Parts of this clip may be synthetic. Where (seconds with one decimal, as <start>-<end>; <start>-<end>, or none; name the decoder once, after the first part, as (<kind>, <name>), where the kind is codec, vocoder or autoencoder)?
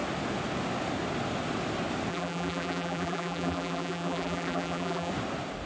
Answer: 2.1-5.1 (vocoder, BigVGAN v2)